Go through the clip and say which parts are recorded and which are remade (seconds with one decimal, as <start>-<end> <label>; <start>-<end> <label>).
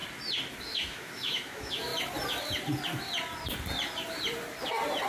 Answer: 0.0-0.6 recorded; 0.6-1.9 remade; 1.9-5.1 recorded